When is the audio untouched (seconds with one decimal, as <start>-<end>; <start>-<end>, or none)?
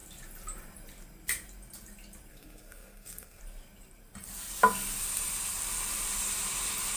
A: 0.0-2.3; 3.4-7.0